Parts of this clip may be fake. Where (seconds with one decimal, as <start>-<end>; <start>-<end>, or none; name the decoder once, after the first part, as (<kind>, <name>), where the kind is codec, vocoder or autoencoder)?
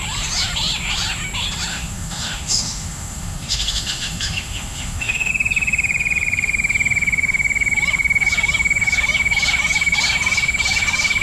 1.7-5.3 (autoencoder, DAC-VAE)